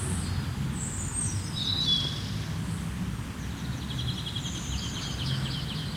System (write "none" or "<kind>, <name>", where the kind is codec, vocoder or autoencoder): none